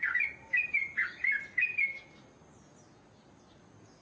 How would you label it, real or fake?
real